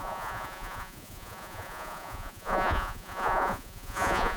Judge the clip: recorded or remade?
remade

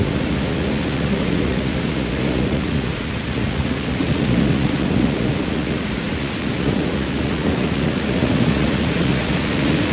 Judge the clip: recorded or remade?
remade